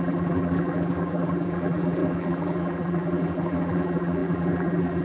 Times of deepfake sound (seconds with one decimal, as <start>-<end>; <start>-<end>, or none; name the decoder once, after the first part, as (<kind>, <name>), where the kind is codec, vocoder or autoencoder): 0.0-5.0 (vocoder, BigVGAN v2)